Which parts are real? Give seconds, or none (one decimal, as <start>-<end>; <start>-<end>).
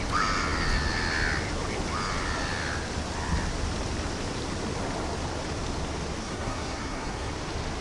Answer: 0.0-6.2; 7.3-7.8